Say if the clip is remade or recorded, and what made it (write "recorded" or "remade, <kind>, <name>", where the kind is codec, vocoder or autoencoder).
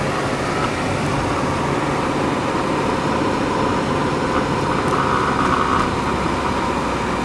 recorded